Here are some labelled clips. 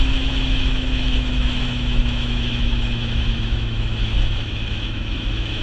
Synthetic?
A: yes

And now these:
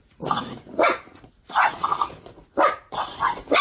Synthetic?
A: yes